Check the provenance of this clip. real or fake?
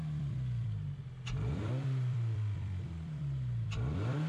fake